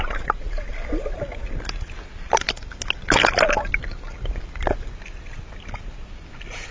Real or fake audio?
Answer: real